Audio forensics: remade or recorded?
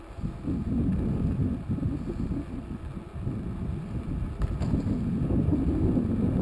recorded